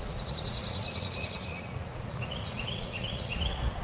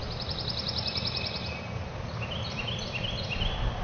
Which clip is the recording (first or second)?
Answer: second